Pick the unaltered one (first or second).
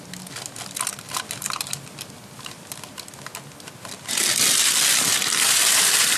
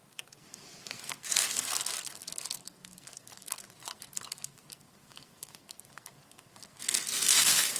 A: first